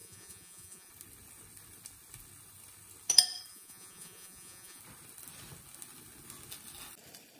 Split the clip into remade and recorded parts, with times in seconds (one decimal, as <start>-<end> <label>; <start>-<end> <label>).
0.0-0.9 remade; 0.9-3.5 recorded; 3.5-4.8 remade; 4.8-7.4 recorded